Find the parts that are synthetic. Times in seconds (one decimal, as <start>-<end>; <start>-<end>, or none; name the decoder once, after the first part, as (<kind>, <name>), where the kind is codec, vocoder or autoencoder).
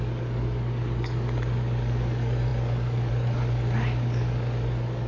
0.0-5.1 (codec, DAC)